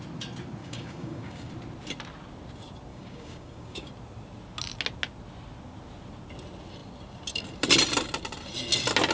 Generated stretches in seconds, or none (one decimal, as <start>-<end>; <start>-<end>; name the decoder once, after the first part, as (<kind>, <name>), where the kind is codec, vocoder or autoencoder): 0.6-1.5 (codec, DAC); 2.9-3.9